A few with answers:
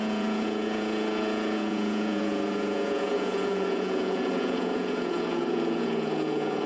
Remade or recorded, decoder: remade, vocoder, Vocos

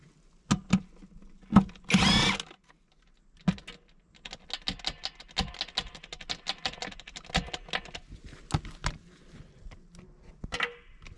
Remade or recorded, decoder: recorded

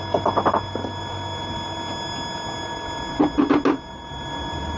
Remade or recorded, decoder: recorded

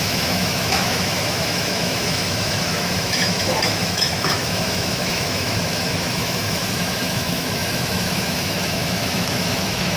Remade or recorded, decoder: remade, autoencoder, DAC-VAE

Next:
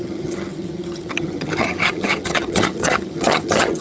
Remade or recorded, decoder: remade, vocoder, HiFi-GAN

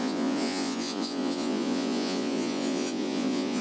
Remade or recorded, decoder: remade, vocoder, Vocos